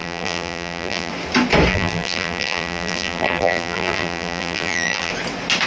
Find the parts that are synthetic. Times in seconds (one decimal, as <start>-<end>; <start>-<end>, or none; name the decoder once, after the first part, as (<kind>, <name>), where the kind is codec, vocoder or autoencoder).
0.0-1.1 (vocoder, BigVGAN v2); 1.7-5.1